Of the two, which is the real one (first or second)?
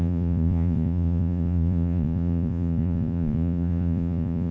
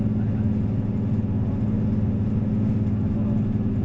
second